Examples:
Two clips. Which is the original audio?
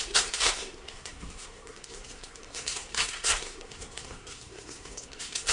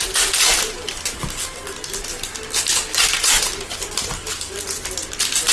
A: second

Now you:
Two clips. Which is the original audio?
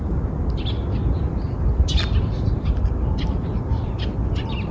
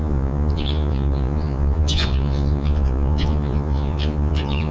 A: first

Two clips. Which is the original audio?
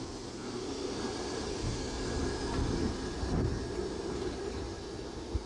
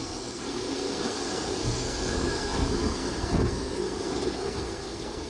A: first